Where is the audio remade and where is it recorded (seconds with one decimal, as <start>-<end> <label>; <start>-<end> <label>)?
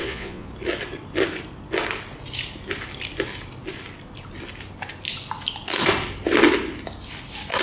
0.0-0.5 remade; 0.5-7.6 recorded